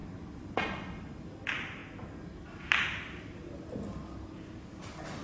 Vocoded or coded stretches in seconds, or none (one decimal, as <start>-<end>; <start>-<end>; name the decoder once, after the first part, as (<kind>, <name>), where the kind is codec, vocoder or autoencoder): none